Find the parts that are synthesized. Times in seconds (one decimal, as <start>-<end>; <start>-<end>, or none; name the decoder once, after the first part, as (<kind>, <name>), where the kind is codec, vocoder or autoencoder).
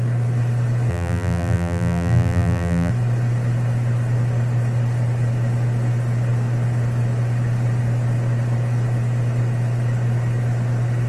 0.9-2.9 (vocoder, BigVGAN v2)